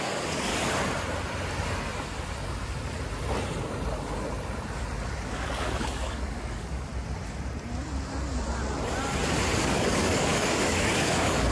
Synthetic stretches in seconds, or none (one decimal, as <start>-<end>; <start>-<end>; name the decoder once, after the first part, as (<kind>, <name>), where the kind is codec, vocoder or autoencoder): 0.0-0.5 (codec, DAC); 5.3-6.9; 9.6-11.5